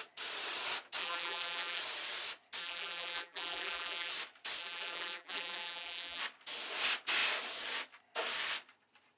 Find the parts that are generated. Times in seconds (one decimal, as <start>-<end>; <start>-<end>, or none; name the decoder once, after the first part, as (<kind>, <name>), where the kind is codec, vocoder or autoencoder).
1.0-1.8 (vocoder, BigVGAN v2); 2.6-4.1; 4.6-6.2